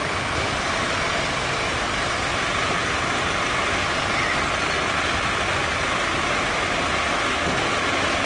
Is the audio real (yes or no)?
yes